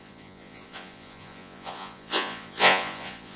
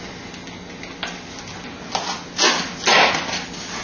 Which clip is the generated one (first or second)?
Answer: first